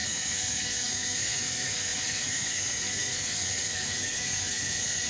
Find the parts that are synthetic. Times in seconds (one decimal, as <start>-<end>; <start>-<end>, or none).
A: 0.0-5.1